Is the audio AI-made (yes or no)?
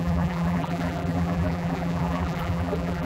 yes